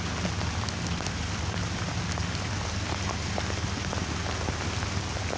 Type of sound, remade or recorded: recorded